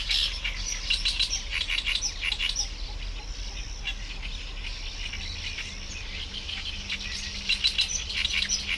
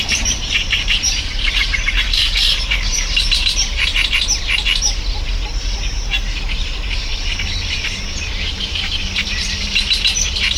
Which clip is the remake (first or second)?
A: second